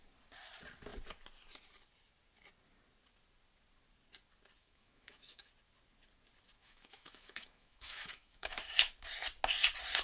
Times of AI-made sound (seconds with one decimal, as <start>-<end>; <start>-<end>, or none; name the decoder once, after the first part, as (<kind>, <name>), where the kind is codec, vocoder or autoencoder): 4.6-5.5 (autoencoder, DAC-VAE); 6.6-8.9